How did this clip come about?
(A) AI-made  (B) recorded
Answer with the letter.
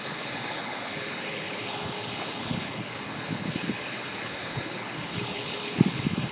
A